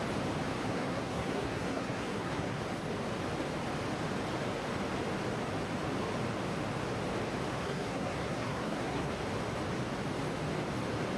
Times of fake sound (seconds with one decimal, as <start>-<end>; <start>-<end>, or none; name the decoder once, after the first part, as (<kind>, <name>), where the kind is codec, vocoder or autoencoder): 0.7-2.6 (codec, SNAC); 7.5-9.1